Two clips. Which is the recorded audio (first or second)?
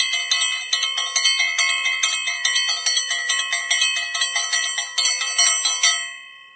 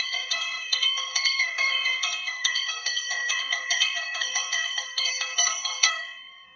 first